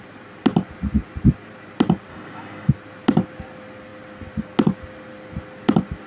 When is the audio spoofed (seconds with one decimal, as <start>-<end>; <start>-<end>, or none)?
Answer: 2.1-2.7